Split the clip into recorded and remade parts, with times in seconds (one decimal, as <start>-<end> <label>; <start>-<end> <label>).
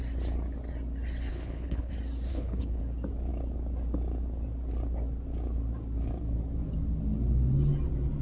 0.0-1.3 recorded; 1.3-1.9 remade; 1.9-2.3 recorded; 2.3-2.8 remade; 2.8-8.2 recorded